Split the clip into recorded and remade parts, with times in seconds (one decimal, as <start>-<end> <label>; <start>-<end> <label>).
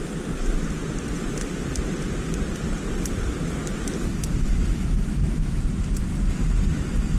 0.0-4.0 recorded; 4.0-5.6 remade; 5.6-7.2 recorded